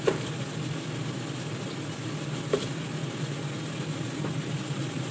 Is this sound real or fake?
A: real